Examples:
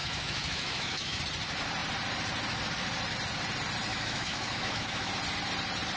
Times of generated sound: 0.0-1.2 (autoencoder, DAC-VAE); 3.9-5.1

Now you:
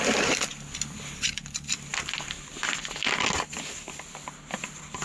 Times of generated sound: none

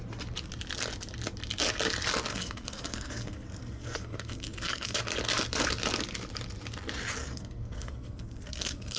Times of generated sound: 2.3-5.0 (codec, SNAC); 7.2-9.0

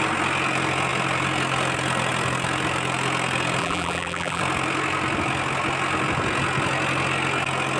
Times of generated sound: 3.6-4.4 (vocoder, BigVGAN v2)

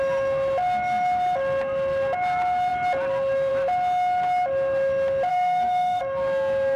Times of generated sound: 5.3-6.0 (codec, SNAC)

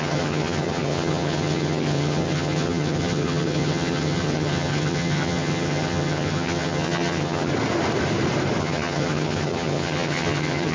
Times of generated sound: 0.0-7.5 (vocoder, HiFi-GAN); 8.6-10.7

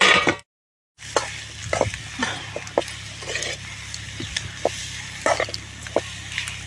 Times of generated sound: none

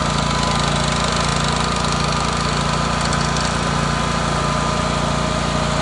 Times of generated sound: none